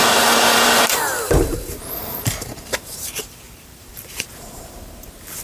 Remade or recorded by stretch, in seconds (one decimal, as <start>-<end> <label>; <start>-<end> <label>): 0.0-5.4 remade